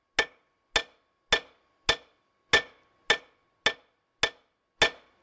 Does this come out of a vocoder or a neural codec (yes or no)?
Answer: no